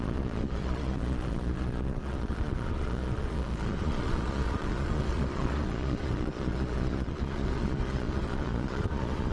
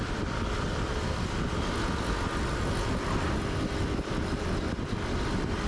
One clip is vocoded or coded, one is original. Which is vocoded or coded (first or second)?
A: first